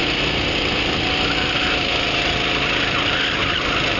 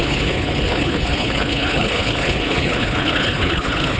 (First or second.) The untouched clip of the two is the first